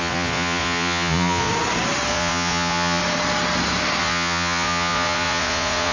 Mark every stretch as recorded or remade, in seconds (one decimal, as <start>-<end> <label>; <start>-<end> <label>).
0.0-1.5 remade; 1.5-2.1 recorded; 2.1-3.0 remade; 3.0-4.0 recorded; 4.0-5.9 remade